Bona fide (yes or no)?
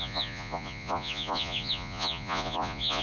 no